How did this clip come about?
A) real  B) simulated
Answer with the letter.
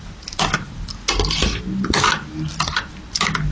A